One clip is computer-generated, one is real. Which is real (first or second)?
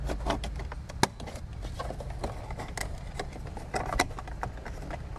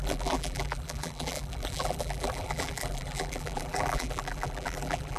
first